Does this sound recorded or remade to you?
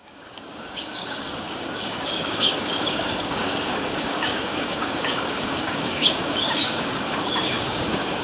remade